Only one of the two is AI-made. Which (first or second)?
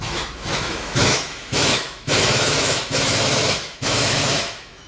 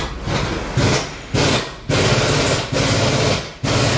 first